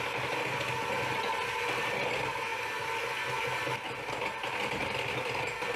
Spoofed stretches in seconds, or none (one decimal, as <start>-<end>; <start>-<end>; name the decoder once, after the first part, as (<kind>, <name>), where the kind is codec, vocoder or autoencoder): none